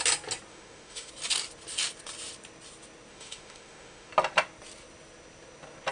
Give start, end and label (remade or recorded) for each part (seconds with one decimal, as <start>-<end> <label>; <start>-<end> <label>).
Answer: 0.0-0.5 recorded; 0.5-1.1 remade; 1.1-3.1 recorded; 3.1-4.1 remade; 4.1-5.9 recorded